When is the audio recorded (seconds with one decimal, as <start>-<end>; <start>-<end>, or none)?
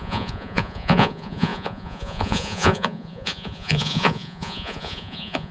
none